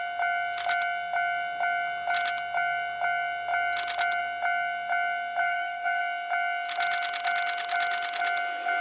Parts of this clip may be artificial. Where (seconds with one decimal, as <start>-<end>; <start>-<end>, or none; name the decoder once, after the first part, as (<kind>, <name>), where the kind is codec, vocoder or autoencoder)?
5.4-6.0 (codec, SNAC)